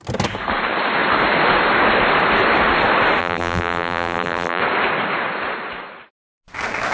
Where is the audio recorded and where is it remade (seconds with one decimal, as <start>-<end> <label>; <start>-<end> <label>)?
0.0-3.2 recorded; 3.2-4.6 remade; 4.6-6.9 recorded